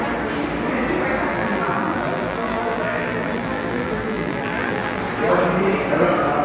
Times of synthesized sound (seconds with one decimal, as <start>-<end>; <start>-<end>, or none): 1.3-5.0